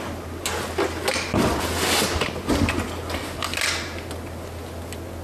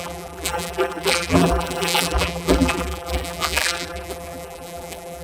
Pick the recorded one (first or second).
first